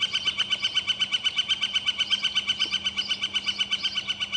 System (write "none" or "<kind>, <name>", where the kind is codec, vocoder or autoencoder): none